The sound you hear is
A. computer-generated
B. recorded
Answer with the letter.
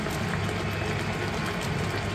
B